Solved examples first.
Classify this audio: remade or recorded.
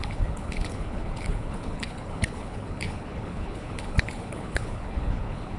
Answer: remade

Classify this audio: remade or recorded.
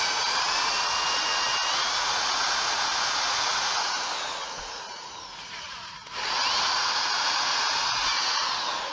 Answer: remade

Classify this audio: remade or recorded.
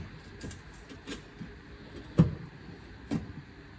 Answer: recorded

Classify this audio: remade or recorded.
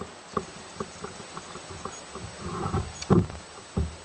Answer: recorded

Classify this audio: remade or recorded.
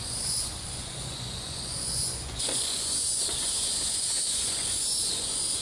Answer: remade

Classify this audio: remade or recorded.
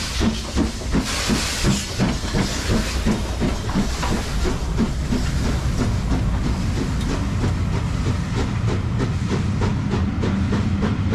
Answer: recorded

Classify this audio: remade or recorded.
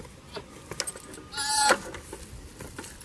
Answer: recorded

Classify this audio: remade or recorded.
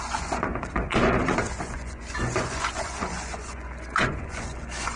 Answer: remade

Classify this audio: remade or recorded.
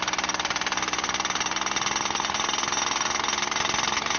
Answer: recorded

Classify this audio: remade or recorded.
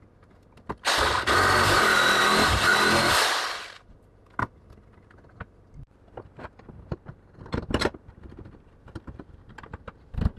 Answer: recorded